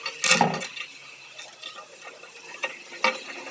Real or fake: real